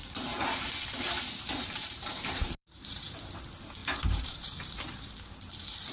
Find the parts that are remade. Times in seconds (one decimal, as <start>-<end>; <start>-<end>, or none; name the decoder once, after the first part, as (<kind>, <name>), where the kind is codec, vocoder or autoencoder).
0.0-3.3 (vocoder, BigVGAN v2); 3.8-5.1